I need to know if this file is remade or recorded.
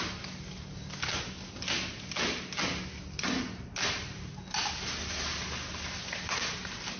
recorded